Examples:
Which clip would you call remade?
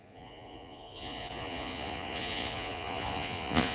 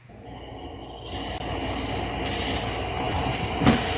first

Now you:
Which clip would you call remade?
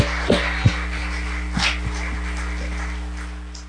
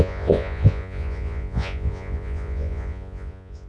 second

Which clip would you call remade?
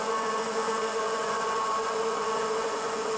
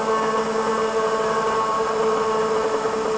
first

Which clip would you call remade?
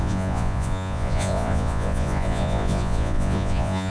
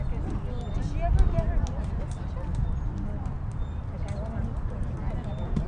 first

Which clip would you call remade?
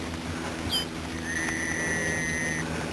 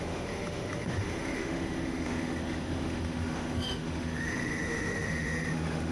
second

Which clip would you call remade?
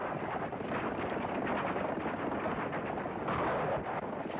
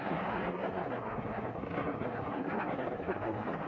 second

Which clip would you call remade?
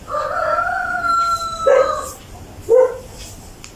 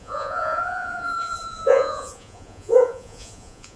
second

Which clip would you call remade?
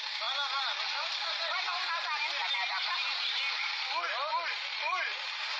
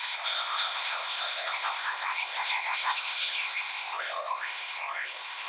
second